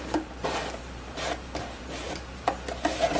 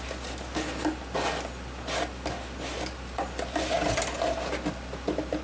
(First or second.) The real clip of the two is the second